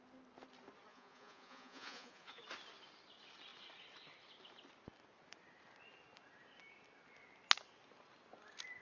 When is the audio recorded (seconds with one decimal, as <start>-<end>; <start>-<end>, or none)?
0.0-0.9; 2.4-8.8